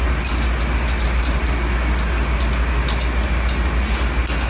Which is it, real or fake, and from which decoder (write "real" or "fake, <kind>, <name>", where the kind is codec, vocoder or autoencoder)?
real